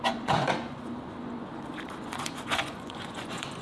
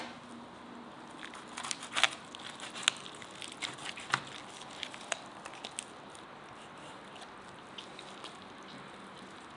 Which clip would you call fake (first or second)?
first